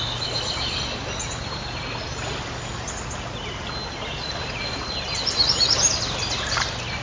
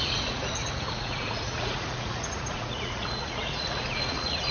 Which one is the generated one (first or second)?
second